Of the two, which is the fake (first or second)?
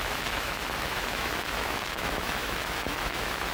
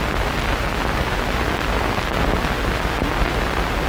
first